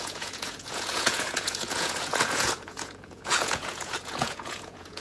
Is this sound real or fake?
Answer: fake